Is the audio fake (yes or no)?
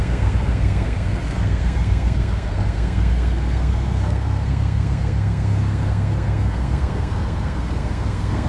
yes